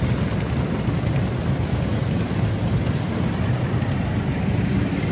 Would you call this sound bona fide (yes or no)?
yes